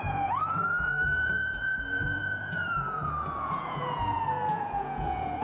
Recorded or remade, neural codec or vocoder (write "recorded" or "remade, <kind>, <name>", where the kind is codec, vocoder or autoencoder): remade, vocoder, Vocos